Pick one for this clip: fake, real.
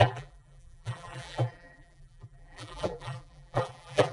fake